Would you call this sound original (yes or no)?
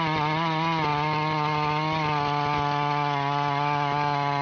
yes